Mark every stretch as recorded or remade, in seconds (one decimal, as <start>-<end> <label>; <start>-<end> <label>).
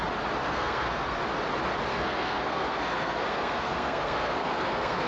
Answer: 0.0-0.4 recorded; 0.4-1.2 remade; 1.2-1.9 recorded; 1.9-5.1 remade